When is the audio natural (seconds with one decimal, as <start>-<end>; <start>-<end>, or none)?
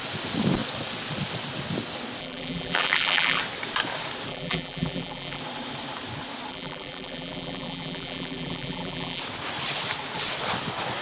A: 0.0-2.2; 3.4-4.3; 5.4-6.5; 9.2-11.0